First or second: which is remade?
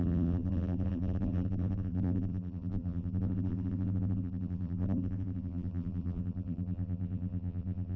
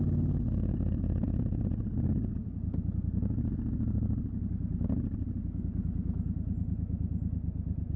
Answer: first